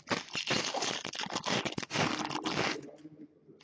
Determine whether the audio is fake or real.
real